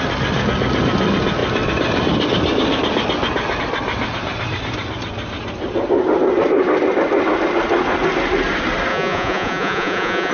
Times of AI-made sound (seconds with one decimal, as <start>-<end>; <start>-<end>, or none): 8.9-10.3